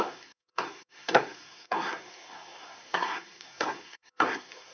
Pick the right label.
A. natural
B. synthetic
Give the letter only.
B